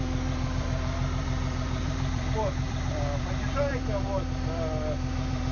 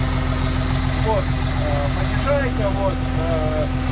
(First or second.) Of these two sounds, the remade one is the first